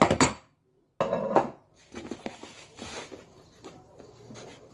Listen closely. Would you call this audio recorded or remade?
recorded